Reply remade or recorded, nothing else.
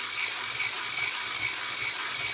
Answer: recorded